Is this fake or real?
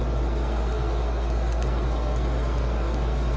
fake